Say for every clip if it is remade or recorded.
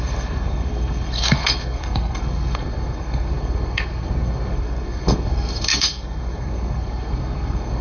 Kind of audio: remade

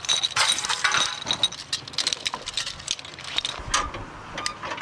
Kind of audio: recorded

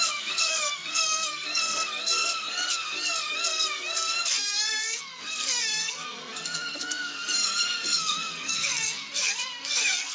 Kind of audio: remade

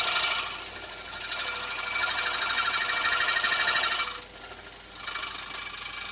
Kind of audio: recorded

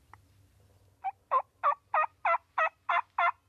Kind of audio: recorded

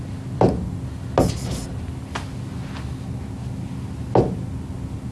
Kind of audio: recorded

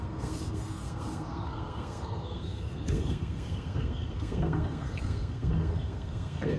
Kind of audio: remade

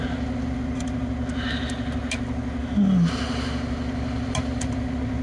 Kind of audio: recorded